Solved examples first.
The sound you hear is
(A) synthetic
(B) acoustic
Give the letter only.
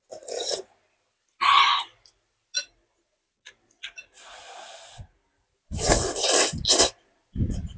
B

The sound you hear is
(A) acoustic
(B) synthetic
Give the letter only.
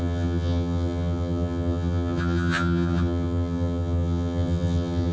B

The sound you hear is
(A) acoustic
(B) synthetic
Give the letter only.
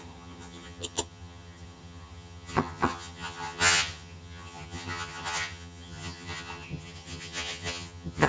B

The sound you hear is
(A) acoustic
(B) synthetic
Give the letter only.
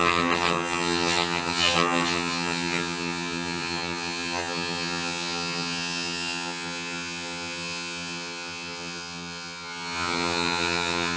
B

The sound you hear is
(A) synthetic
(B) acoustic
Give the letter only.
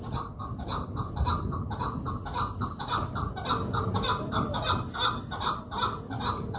B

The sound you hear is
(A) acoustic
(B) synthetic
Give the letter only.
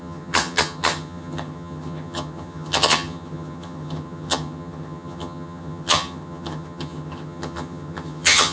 B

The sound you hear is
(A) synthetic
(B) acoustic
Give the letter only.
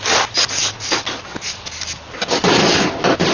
B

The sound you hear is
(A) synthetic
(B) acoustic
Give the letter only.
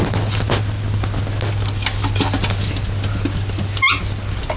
B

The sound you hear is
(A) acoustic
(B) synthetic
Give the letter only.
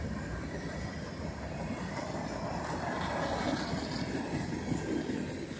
A